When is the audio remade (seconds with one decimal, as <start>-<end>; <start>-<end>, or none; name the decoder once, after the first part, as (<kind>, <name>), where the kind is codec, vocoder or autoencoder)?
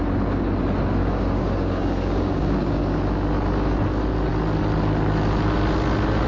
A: 1.0-3.0 (codec, DAC)